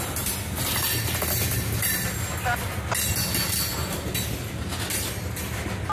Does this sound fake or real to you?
real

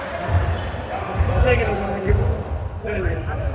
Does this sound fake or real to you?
real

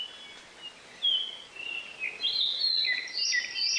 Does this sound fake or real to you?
real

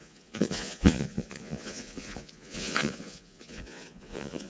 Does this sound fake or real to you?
fake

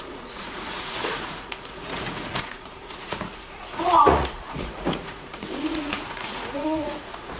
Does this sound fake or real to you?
fake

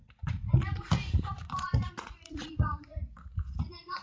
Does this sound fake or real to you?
fake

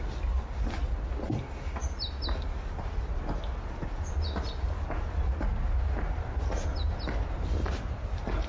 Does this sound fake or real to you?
real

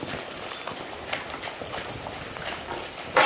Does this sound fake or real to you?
real